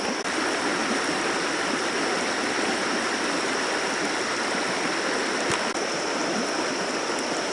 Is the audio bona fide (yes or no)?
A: yes